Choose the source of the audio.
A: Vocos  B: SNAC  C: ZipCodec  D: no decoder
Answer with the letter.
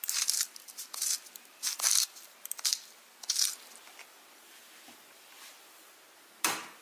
D